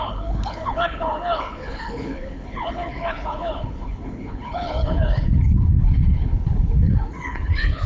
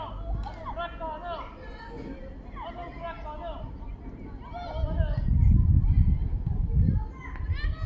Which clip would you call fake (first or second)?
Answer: first